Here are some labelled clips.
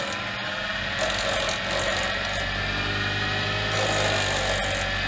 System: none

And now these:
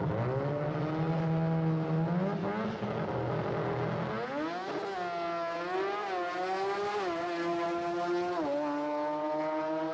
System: none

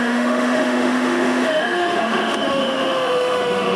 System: autoencoder, DAC-VAE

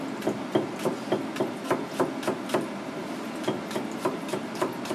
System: none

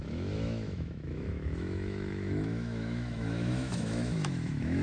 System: autoencoder, DAC-VAE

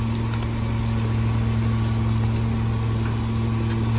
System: none